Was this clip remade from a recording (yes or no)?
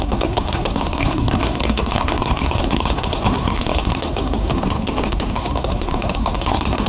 yes